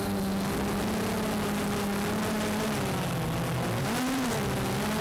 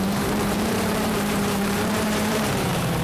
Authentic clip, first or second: first